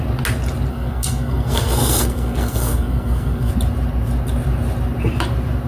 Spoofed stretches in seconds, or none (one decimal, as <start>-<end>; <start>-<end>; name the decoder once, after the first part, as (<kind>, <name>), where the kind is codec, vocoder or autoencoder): 0.7-3.5 (codec, SNAC)